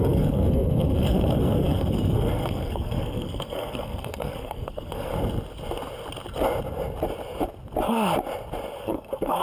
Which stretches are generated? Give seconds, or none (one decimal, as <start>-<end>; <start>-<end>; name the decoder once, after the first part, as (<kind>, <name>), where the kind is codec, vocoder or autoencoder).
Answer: 0.0-5.1 (codec, SNAC); 8.8-9.4